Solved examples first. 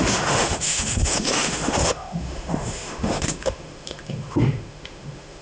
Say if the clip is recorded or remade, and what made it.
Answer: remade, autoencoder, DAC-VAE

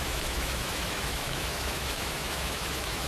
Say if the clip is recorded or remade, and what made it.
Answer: remade, autoencoder, DAC-VAE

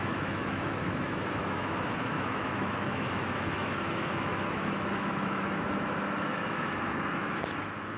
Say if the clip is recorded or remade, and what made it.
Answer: remade, autoencoder, DAC-VAE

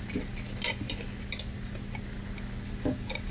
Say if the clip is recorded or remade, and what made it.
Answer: recorded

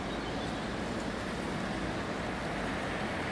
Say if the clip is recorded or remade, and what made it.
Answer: recorded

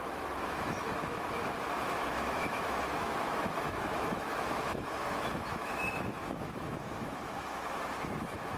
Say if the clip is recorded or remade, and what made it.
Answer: remade, autoencoder, DAC-VAE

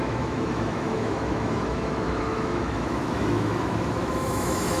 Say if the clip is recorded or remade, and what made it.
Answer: remade, autoencoder, DAC-VAE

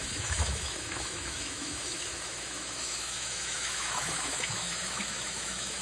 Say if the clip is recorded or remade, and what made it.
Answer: remade, autoencoder, DAC-VAE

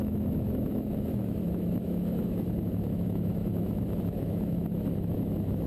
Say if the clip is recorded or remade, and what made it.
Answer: remade, autoencoder, DAC-VAE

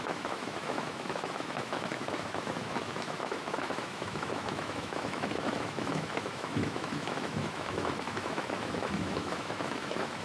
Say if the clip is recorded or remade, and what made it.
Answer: remade, autoencoder, DAC-VAE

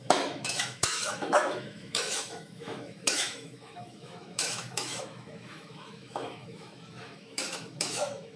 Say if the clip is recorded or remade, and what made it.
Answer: remade, autoencoder, DAC-VAE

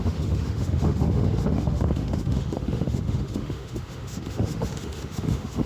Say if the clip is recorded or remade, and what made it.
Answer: remade, autoencoder, DAC-VAE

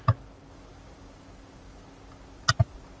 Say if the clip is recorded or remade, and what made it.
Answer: recorded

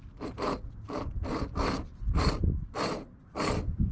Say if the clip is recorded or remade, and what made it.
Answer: recorded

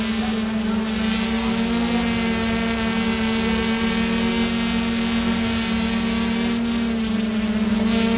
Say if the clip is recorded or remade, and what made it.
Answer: recorded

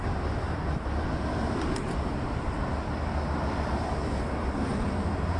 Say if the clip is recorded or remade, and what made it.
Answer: recorded